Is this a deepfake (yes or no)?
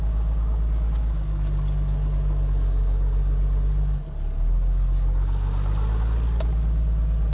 no